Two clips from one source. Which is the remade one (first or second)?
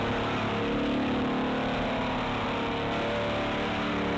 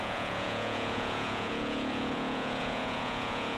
second